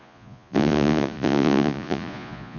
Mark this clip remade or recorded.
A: remade